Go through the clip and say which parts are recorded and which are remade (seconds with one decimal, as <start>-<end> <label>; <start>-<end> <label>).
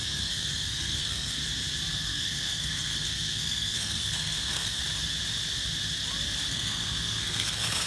0.0-1.4 remade; 1.4-1.9 recorded; 1.9-4.8 remade; 4.8-6.5 recorded; 6.5-7.9 remade